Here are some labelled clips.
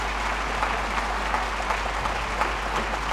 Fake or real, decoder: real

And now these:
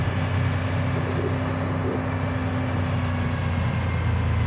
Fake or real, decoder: real